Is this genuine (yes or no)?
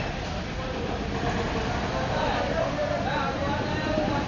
yes